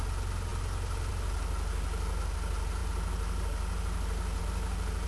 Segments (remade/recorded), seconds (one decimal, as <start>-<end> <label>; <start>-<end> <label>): 0.0-5.1 recorded